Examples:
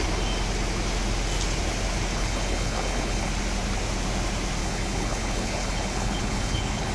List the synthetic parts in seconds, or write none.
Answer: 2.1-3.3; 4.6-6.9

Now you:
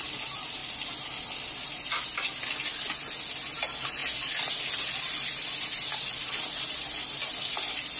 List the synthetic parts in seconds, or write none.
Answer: none

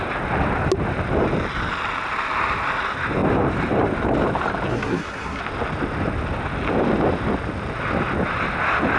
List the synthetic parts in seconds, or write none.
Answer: 4.7-5.4

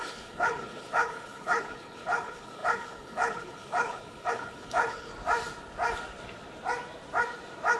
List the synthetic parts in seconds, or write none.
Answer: 0.0-5.1

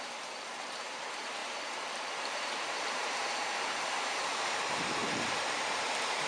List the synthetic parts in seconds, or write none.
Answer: 0.0-5.0; 5.7-6.3